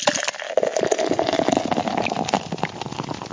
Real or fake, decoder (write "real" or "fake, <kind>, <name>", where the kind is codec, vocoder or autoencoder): real